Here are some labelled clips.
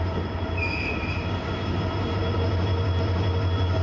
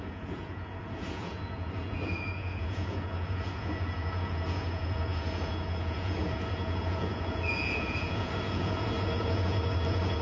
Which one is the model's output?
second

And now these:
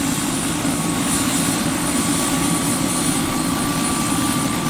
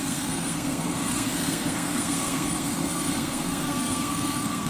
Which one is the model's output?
second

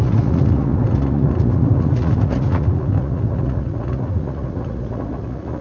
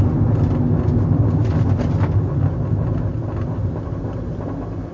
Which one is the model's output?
first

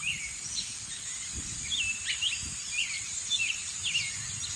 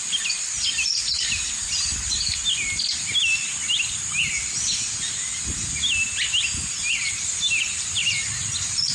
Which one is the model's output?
first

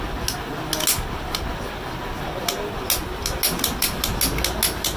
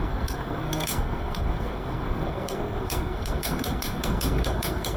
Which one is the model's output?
second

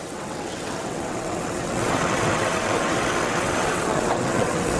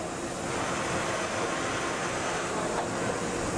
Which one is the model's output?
first